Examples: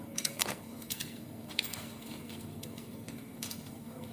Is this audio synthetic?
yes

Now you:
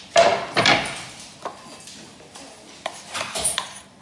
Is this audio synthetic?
no